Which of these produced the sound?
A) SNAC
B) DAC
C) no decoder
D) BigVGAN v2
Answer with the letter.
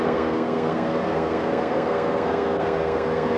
A